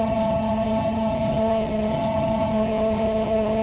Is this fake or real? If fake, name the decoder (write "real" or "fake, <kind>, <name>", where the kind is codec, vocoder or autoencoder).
fake, vocoder, HiFi-GAN